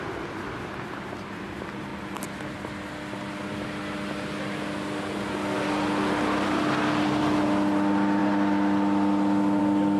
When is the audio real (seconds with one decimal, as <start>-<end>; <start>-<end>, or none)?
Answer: 0.0-10.0